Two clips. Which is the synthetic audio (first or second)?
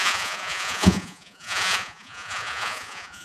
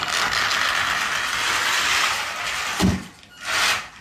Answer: first